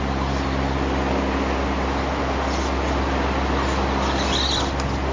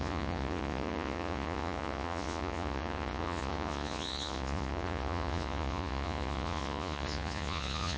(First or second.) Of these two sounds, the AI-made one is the second